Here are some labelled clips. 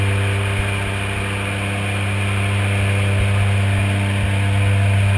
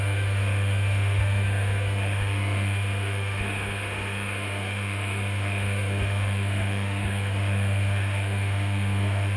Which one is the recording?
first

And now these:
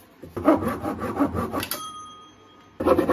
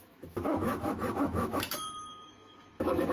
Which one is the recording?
first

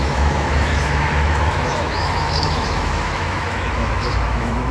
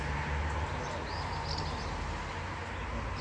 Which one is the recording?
second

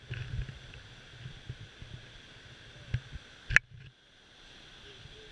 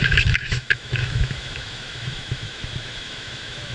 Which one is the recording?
first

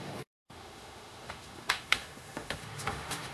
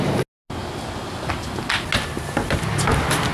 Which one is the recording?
second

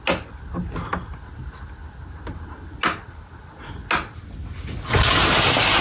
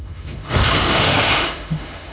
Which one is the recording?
first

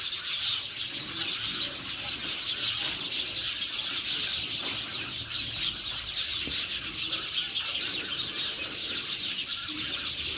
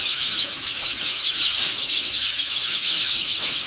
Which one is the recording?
first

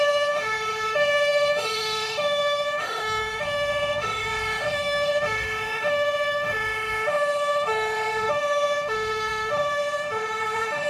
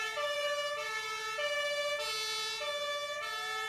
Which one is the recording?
second